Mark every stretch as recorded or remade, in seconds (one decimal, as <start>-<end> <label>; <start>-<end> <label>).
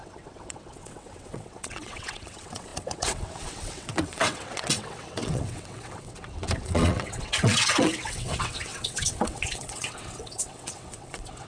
0.0-11.5 remade